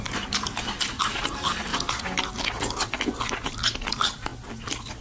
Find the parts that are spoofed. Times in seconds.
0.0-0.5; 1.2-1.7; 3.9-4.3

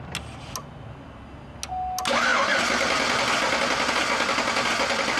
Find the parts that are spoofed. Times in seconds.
none

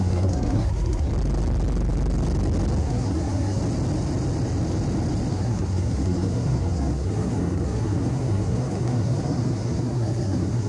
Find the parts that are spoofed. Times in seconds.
0.0-1.1; 2.8-3.6; 5.3-10.7

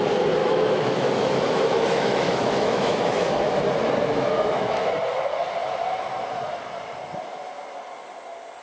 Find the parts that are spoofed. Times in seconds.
0.4-3.6; 4.1-4.9

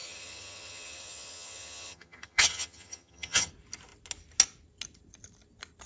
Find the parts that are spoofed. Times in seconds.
0.0-3.5

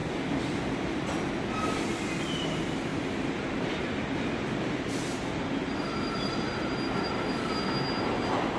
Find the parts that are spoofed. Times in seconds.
2.9-7.7

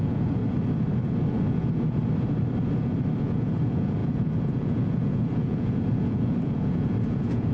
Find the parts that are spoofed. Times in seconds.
0.0-0.4; 1.3-2.0; 3.2-7.5